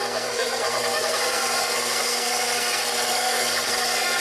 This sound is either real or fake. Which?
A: fake